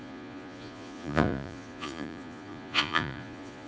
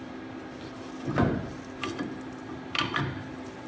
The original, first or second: second